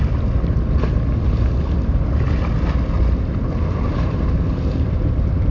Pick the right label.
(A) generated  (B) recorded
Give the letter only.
B